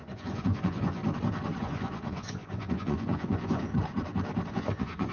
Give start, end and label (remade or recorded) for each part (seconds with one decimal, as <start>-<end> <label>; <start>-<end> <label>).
0.0-1.0 remade; 1.0-1.6 recorded; 1.6-3.7 remade; 3.7-4.5 recorded; 4.5-5.1 remade